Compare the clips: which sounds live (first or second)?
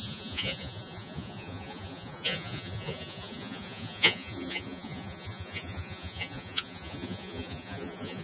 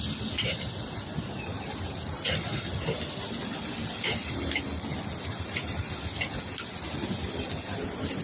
second